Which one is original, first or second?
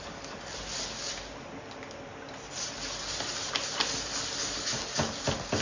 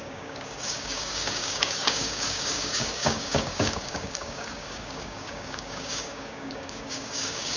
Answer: first